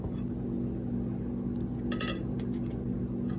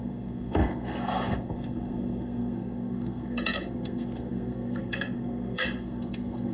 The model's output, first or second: second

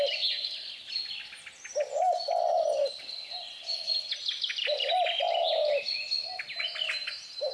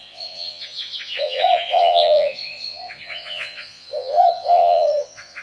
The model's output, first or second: second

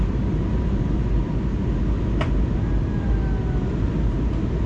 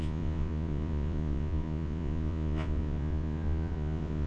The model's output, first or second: second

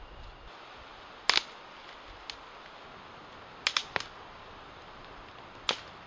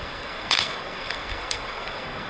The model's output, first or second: second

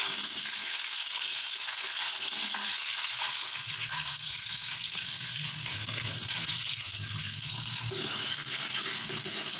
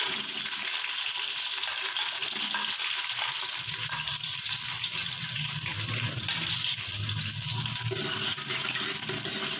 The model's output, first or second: first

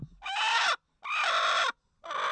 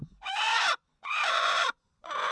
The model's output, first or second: second